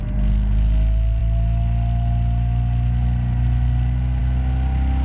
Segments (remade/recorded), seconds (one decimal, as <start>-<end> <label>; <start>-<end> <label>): 0.0-5.0 recorded

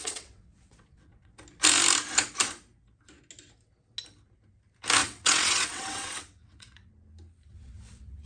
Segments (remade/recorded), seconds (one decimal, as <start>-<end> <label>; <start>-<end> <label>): 0.0-1.3 remade; 1.3-5.0 recorded; 5.0-6.9 remade; 6.9-7.5 recorded; 7.5-8.3 remade

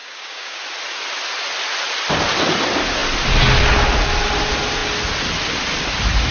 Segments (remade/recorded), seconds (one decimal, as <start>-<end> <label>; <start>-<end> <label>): 0.0-0.6 remade; 0.6-6.3 recorded

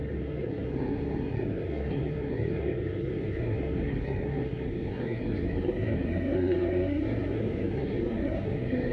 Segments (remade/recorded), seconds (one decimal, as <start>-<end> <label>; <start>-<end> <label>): 0.0-8.9 remade

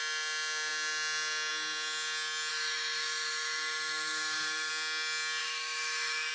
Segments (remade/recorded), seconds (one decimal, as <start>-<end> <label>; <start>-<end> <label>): 0.0-2.5 recorded; 2.5-4.7 remade; 4.7-5.4 recorded; 5.4-6.3 remade